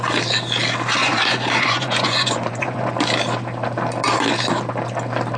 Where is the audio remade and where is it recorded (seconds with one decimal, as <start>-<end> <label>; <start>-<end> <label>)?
0.0-1.0 recorded; 1.0-2.9 remade; 2.9-5.4 recorded